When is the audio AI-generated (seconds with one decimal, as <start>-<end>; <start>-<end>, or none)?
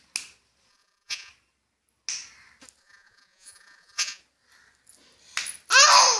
0.7-1.3; 2.8-4.2